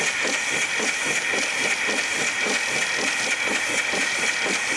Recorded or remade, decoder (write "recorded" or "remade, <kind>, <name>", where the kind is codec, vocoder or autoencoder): recorded